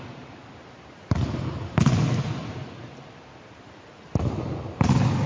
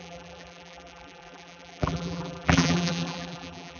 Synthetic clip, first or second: second